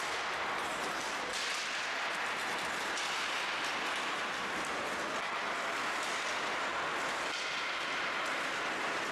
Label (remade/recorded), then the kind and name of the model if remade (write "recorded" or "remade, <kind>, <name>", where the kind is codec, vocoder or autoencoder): recorded